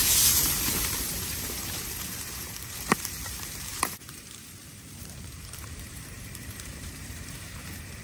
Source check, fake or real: fake